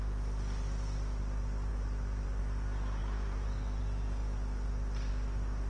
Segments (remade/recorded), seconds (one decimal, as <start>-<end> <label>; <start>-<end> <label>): 0.0-1.7 recorded; 1.7-2.4 remade; 2.4-3.0 recorded; 3.0-3.8 remade; 3.8-5.7 recorded